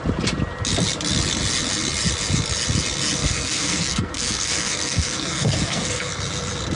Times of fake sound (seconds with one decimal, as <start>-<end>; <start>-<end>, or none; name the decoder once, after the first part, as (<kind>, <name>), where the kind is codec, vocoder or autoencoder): 3.2-6.2 (codec, SNAC)